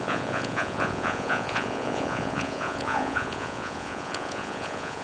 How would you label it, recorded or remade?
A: remade